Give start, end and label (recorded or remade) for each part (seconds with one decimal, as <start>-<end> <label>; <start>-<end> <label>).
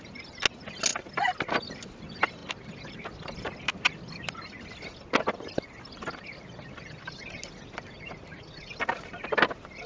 0.0-0.9 recorded; 0.9-1.5 remade; 1.5-9.9 recorded